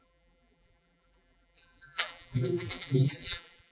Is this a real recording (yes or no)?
no